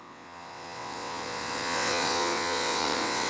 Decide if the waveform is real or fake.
fake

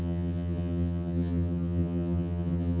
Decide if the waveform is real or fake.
fake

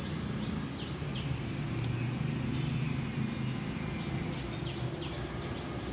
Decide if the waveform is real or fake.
real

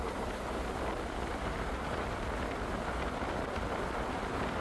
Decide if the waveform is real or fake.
real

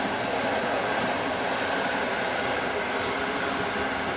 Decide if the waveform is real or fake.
real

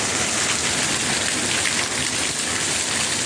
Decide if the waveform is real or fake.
real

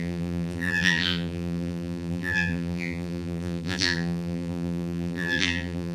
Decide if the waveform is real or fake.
fake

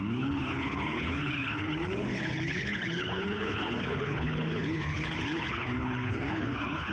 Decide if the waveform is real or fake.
fake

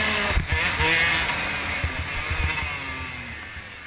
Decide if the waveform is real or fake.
real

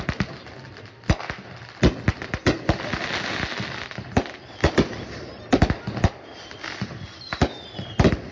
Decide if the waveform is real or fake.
real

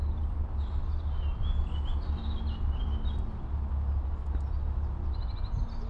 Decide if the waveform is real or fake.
real